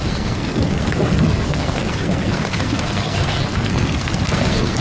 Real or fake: fake